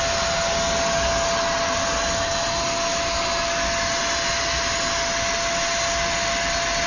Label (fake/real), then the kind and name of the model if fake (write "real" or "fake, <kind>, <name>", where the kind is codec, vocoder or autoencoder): real